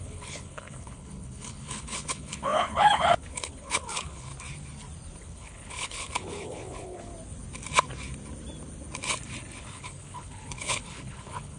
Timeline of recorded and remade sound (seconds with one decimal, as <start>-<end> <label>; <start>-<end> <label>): 0.0-4.3 remade; 4.3-5.2 recorded; 5.2-7.1 remade; 7.1-9.6 recorded; 9.6-11.6 remade